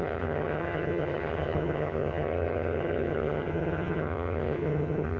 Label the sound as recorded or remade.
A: remade